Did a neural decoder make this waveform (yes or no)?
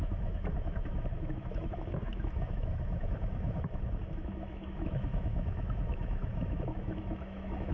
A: yes